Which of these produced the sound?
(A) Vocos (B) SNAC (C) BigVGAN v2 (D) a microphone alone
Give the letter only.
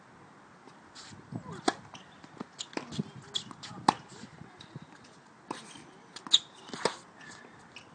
D